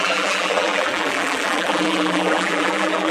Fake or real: fake